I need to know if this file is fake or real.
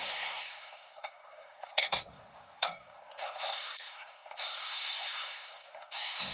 fake